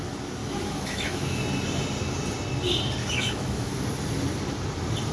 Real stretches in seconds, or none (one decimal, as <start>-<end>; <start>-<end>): 0.0-0.4; 1.4-3.0; 3.7-5.1